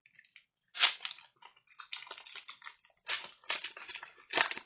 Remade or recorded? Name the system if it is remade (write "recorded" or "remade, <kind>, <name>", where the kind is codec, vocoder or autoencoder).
recorded